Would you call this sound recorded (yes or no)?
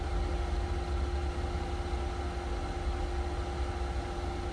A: yes